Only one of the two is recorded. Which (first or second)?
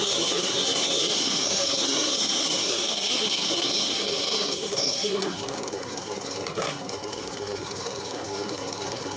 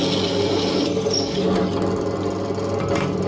second